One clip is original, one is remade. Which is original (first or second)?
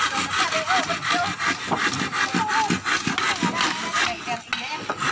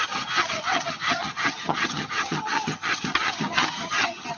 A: first